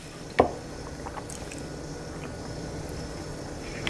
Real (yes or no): yes